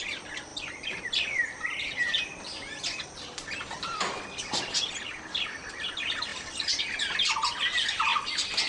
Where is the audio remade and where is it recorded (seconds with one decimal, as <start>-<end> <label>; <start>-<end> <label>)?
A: 0.0-0.5 recorded; 0.5-4.9 remade; 4.9-6.3 recorded; 6.3-6.8 remade; 6.8-8.1 recorded; 8.1-8.7 remade